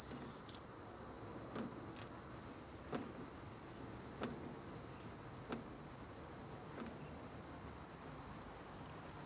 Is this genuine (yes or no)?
yes